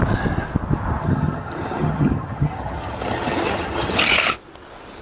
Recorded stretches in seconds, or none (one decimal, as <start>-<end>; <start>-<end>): 0.0-1.0; 4.0-5.0